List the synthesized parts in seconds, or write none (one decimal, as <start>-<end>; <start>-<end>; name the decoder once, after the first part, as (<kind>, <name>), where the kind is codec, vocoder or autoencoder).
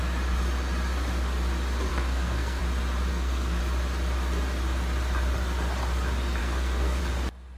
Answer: 1.9-2.6 (codec, SNAC); 3.1-3.6; 6.4-7.0